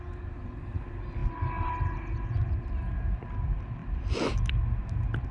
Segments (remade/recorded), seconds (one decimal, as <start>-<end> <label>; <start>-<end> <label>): 0.0-5.3 recorded